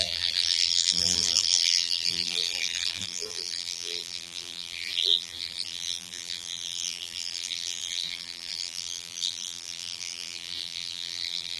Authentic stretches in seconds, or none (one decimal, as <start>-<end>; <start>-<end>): none